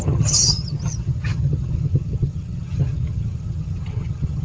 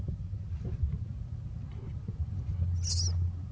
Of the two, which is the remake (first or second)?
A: first